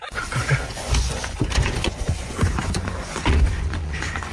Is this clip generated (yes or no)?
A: yes